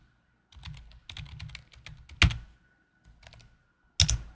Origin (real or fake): real